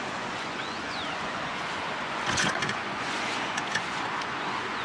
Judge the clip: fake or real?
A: fake